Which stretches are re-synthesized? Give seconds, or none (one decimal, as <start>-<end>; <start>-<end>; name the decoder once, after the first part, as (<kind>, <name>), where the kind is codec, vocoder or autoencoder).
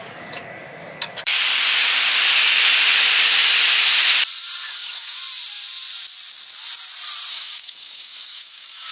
0.0-1.5 (codec, DAC); 4.7-5.2; 7.3-8.9